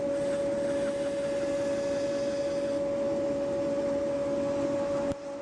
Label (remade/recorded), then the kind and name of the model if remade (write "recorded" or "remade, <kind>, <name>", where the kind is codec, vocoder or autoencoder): recorded